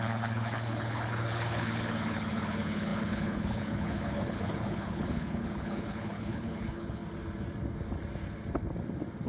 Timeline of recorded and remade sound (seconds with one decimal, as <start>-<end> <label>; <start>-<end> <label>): 0.0-7.0 remade; 7.0-9.3 recorded